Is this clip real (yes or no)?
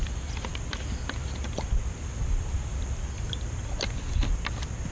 yes